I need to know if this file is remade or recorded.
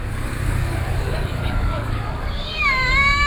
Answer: remade